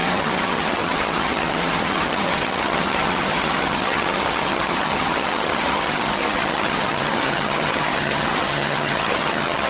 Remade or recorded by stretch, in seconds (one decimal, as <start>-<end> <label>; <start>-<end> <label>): 0.0-9.7 remade